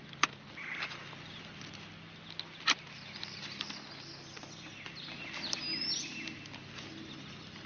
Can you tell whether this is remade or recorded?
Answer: recorded